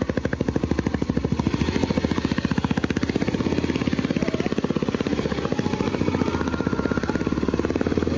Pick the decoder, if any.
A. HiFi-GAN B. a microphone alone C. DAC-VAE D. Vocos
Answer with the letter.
B